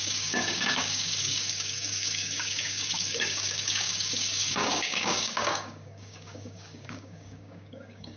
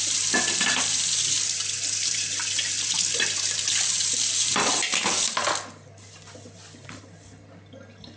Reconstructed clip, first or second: first